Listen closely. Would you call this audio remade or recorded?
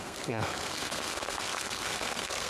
remade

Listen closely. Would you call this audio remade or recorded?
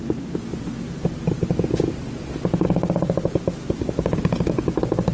recorded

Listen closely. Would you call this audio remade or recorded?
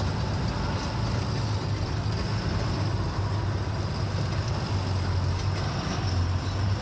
recorded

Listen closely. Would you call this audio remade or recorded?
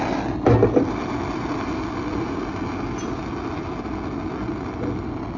recorded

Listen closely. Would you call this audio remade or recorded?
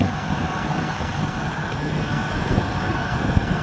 remade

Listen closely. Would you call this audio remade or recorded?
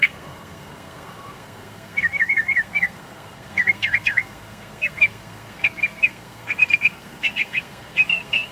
remade